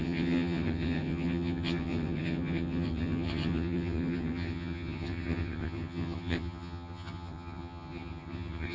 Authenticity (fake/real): fake